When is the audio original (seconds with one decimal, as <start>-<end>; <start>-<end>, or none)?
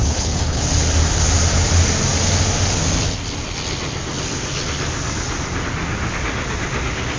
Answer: 0.6-7.2